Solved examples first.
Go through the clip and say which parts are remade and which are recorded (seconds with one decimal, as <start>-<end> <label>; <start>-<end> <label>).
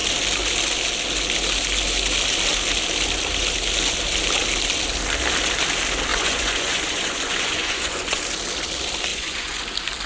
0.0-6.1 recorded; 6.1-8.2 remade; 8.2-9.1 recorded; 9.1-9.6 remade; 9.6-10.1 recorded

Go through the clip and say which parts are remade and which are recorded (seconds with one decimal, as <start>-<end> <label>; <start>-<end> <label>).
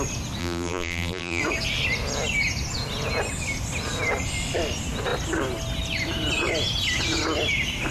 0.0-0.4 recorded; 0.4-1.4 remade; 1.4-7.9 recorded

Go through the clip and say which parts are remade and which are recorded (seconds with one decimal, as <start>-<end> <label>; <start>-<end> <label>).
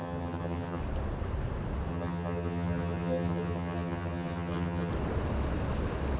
0.0-0.8 remade; 0.8-1.9 recorded; 1.9-4.9 remade; 4.9-6.2 recorded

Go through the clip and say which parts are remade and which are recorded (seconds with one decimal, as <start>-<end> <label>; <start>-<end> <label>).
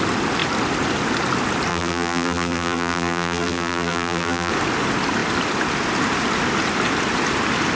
0.0-1.7 recorded; 1.7-4.5 remade; 4.5-7.7 recorded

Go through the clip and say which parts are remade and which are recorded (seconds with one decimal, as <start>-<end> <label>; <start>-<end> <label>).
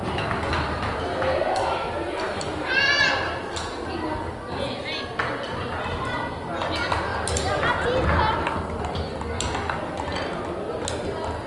0.0-11.5 recorded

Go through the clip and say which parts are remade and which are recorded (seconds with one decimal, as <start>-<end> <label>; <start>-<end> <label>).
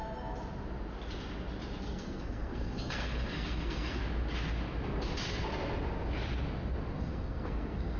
0.0-1.8 recorded; 1.8-4.0 remade; 4.0-7.0 recorded; 7.0-8.0 remade